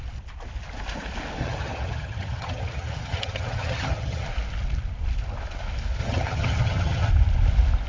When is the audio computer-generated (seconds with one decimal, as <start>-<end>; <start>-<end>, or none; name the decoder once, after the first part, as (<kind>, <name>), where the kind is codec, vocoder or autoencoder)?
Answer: 1.4-4.3 (vocoder, HiFi-GAN); 6.0-7.1